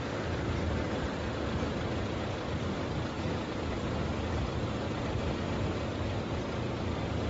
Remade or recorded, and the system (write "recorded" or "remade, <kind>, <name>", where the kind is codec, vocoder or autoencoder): remade, vocoder, BigVGAN v2